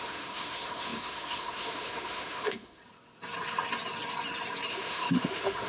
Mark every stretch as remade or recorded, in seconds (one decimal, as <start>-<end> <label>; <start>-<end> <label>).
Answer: 0.0-2.8 remade; 2.8-4.7 recorded; 4.7-5.7 remade